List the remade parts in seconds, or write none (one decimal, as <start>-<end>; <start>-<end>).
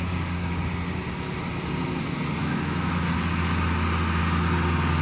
2.4-3.1